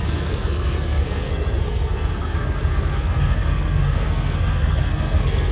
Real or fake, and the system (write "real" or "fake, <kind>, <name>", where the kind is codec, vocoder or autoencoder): fake, codec, SNAC